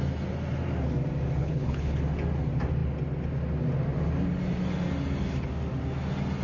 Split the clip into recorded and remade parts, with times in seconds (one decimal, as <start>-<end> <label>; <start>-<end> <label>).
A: 0.0-1.4 recorded; 1.4-2.0 remade; 2.0-6.4 recorded